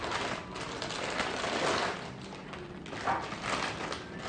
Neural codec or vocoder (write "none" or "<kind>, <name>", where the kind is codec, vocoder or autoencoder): none